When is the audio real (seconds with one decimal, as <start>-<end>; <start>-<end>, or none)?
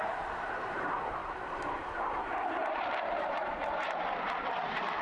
none